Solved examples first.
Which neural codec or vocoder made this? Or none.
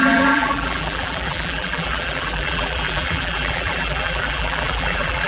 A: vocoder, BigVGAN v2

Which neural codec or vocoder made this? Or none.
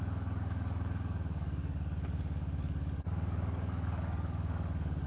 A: codec, DAC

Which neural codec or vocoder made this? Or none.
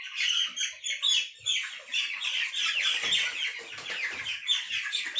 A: none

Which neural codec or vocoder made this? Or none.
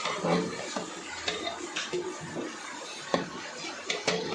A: none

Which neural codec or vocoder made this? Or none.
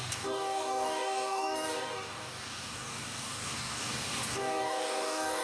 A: codec, DAC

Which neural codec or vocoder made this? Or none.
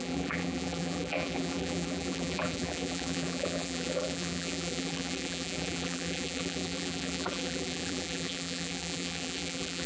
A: vocoder, BigVGAN v2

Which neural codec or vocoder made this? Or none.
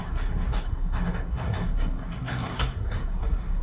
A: codec, SNAC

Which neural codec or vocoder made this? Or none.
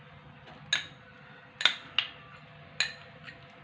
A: none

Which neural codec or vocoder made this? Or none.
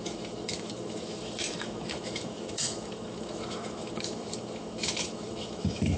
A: autoencoder, DAC-VAE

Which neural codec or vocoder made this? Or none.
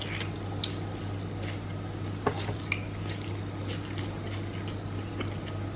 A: none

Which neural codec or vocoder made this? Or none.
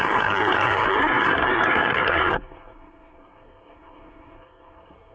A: codec, SNAC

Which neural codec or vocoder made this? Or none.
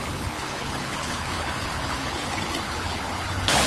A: codec, HILCodec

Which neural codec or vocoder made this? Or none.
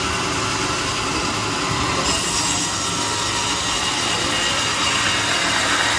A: none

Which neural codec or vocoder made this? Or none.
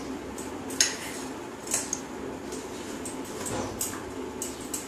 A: none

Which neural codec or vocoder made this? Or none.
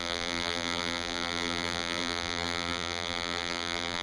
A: vocoder, BigVGAN v2